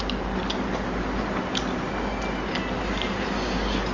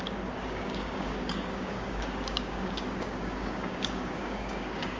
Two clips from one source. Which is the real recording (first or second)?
first